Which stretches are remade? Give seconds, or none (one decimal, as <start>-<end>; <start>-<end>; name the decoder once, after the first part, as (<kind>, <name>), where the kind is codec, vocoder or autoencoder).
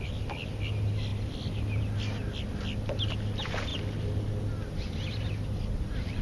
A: none